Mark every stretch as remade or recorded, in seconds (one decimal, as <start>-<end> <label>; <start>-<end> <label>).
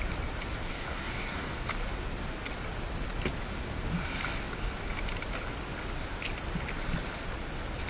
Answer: 0.0-0.7 recorded; 0.7-1.6 remade; 1.6-7.9 recorded